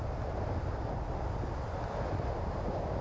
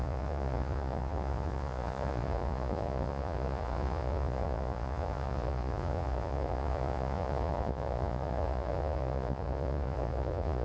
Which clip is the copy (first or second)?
second